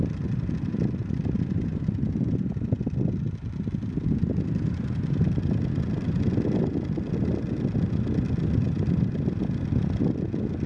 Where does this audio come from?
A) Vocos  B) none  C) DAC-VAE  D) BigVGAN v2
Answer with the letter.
B